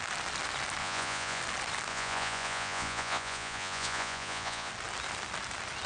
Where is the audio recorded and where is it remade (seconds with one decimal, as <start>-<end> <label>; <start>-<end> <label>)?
0.0-0.8 recorded; 0.8-1.4 remade; 1.4-1.9 recorded; 1.9-4.7 remade; 4.7-5.9 recorded